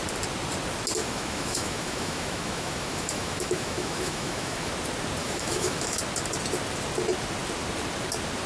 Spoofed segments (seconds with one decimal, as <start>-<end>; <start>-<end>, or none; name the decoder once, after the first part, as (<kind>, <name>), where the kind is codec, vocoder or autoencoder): 1.0-4.7 (autoencoder, DAC-VAE); 5.2-6.0